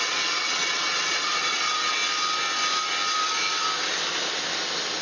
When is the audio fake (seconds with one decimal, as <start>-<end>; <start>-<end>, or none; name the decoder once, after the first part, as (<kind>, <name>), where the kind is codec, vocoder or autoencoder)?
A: 0.0-2.0 (vocoder, WaveNeXt)